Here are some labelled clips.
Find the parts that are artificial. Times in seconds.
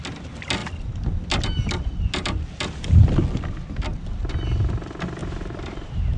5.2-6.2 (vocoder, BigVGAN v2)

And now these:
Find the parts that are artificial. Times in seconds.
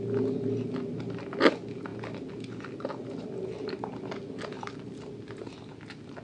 none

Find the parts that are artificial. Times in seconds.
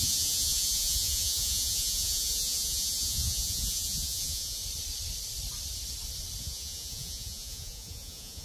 0.0-4.6 (vocoder, Vocos); 6.4-8.4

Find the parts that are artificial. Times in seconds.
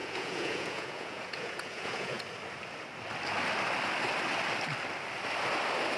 0.0-2.2 (vocoder, Vocos)